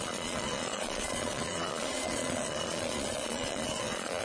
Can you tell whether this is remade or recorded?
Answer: remade